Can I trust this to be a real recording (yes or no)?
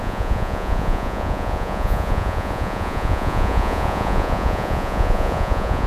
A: no